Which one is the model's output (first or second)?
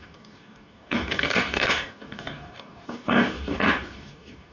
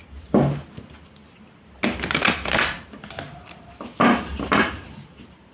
first